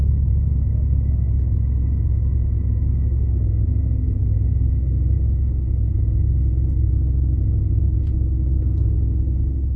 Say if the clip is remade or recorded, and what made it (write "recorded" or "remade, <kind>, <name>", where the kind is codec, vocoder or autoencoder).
recorded